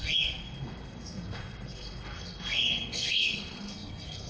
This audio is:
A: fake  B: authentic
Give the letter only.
A